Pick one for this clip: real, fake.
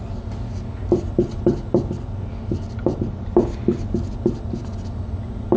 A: real